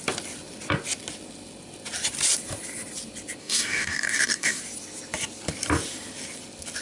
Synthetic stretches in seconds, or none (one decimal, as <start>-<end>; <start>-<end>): 3.4-4.6